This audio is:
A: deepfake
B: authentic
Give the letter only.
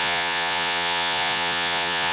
A